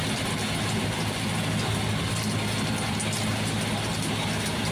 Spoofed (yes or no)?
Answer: no